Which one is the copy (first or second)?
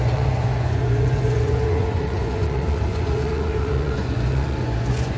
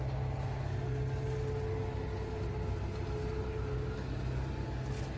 first